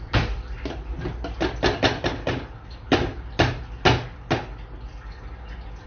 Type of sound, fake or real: real